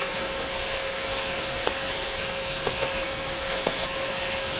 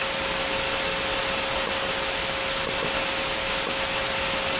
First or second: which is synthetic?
first